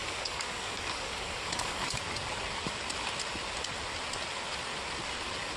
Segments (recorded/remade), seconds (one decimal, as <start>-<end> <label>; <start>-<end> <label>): 0.0-2.0 remade; 2.0-5.6 recorded

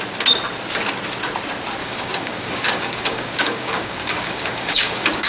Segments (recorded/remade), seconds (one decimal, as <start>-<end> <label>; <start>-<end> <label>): 0.0-1.8 recorded; 1.8-5.3 remade